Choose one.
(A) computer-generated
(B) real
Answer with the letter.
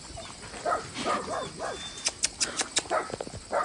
B